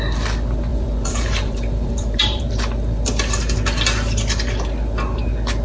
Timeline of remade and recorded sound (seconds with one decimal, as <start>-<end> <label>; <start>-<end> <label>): 0.0-0.7 recorded; 0.7-2.5 remade; 2.5-5.6 recorded